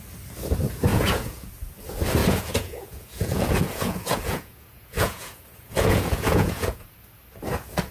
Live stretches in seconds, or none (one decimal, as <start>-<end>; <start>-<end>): 0.0-0.9; 1.5-2.2; 6.9-7.9